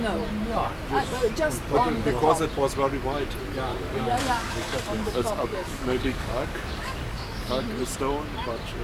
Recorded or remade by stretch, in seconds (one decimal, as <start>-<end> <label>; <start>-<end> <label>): 0.0-3.7 recorded; 3.7-7.6 remade; 7.6-8.8 recorded